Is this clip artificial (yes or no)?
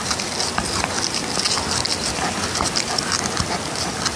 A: no